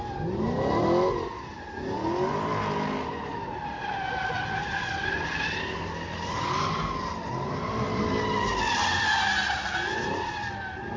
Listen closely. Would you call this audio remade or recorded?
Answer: recorded